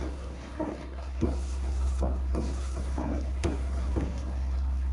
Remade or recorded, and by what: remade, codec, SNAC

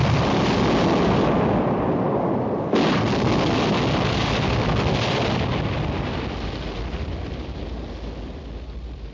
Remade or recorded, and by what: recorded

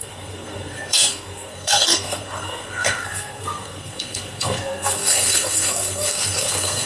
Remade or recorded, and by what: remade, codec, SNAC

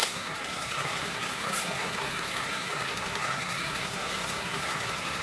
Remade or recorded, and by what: remade, codec, SNAC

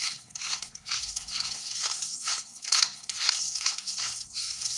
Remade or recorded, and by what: remade, codec, SNAC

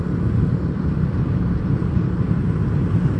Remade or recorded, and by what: recorded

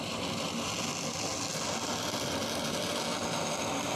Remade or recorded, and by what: recorded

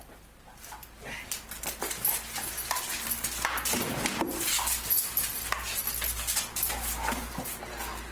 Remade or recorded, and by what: recorded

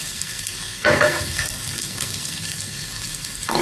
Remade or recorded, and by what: remade, codec, SNAC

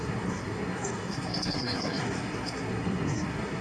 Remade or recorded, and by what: remade, codec, SNAC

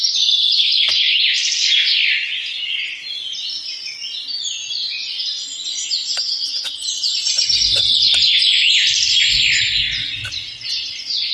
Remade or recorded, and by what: recorded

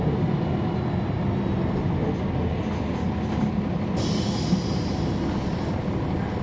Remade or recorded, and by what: recorded